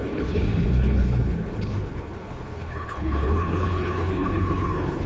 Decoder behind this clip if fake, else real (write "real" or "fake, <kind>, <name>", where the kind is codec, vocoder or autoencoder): fake, codec, HILCodec